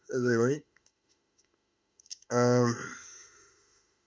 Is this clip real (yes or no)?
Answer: no